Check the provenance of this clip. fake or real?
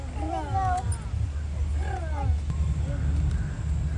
real